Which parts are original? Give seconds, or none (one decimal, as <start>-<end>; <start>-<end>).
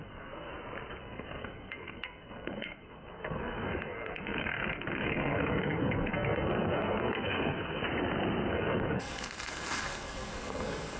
0.5-1.0; 7.8-8.5